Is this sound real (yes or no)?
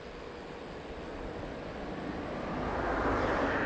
yes